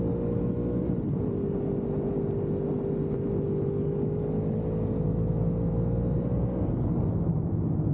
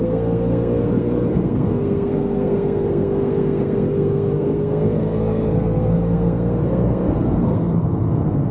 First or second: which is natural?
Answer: first